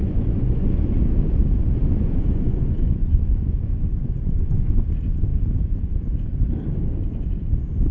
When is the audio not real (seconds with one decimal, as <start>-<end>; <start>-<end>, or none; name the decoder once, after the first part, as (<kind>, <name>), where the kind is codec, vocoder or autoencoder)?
0.0-0.8 (vocoder, Vocos); 1.8-4.7